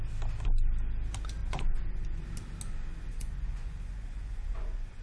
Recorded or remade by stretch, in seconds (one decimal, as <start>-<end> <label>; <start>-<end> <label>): 0.0-1.4 recorded; 1.4-2.2 remade; 2.2-3.1 recorded; 3.1-5.0 remade

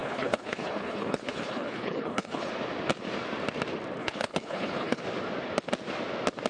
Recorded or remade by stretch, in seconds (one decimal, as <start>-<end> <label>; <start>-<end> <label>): 0.0-2.5 remade; 2.5-4.0 recorded; 4.0-5.0 remade; 5.0-6.5 recorded

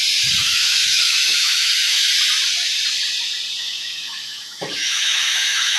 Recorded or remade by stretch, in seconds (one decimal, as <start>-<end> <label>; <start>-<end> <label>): 0.0-0.4 recorded; 0.4-2.1 remade; 2.1-3.6 recorded; 3.6-5.8 remade

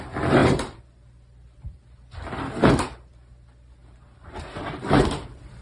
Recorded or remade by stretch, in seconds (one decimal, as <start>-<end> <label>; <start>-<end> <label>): 0.0-0.4 recorded; 0.4-2.7 remade; 2.7-3.8 recorded; 3.8-5.6 remade

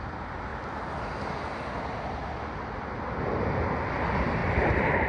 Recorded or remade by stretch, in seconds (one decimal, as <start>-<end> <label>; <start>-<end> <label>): 0.0-4.4 recorded; 4.4-5.1 remade

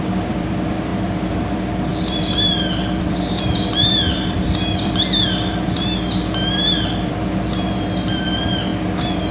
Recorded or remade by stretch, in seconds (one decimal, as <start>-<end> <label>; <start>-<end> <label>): 0.0-8.7 remade; 8.7-9.3 recorded

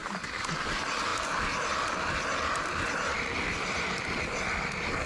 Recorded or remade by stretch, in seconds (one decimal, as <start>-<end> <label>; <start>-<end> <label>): 0.0-0.7 remade; 0.7-5.1 recorded